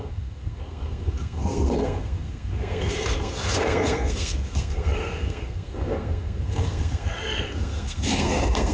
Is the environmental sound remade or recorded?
remade